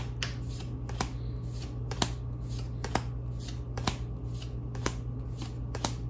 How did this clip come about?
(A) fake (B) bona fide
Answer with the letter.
B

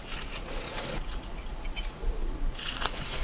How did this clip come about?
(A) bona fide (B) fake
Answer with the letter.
B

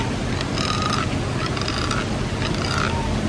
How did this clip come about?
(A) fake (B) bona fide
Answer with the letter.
B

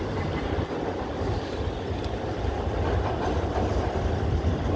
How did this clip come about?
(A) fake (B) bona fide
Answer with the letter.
B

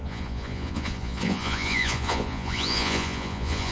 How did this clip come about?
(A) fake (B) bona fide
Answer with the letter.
A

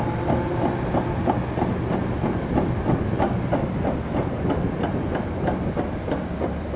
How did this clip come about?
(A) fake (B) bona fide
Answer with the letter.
B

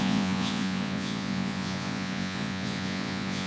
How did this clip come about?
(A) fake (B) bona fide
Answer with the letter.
A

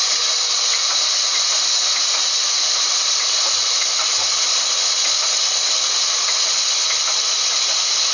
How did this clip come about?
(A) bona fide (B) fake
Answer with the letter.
A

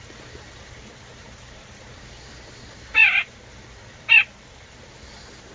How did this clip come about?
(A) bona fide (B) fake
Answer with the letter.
A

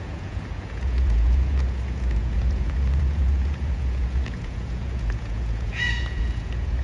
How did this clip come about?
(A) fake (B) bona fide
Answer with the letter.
A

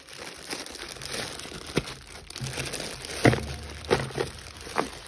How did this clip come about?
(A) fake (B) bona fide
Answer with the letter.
B